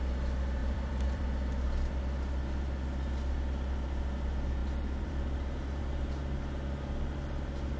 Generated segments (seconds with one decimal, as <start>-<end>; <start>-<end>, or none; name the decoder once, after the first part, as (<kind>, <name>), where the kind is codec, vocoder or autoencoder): 0.6-1.2 (vocoder, BigVGAN v2); 4.6-5.8